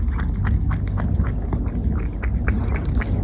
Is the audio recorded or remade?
recorded